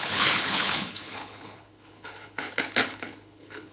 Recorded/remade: remade